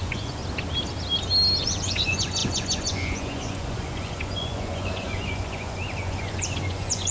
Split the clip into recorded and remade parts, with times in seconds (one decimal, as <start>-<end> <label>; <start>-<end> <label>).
0.0-0.4 remade; 0.4-1.6 recorded; 1.6-7.1 remade